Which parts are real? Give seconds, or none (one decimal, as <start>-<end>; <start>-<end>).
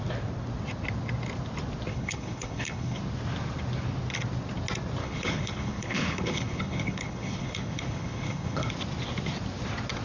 0.0-1.9; 3.0-5.0; 8.7-10.0